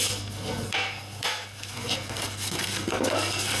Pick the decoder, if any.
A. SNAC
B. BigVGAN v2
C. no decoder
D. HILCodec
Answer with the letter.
A